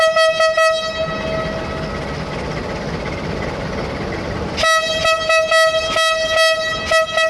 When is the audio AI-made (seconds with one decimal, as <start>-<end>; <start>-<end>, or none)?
none